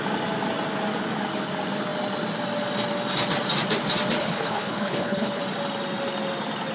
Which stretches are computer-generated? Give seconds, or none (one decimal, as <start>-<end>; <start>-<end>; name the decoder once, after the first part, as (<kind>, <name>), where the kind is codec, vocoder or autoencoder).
4.2-5.4 (codec, HILCodec)